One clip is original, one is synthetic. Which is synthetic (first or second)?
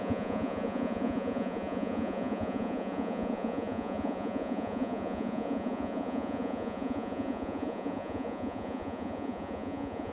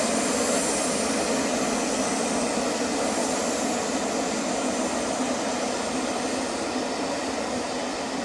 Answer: first